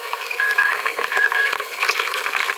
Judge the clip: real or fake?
fake